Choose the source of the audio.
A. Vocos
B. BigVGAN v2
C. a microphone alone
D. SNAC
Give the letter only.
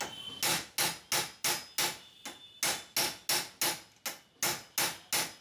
C